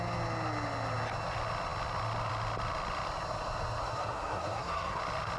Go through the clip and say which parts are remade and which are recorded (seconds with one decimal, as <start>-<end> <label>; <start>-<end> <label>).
0.0-3.8 recorded; 3.8-5.0 remade; 5.0-5.4 recorded